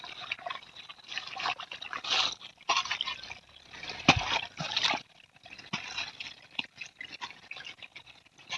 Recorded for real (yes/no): yes